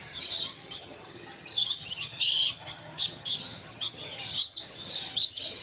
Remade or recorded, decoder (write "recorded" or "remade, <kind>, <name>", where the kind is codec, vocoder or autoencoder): remade, vocoder, HiFi-GAN